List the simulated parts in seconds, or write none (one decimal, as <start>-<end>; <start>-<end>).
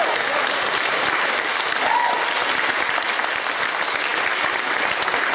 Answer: none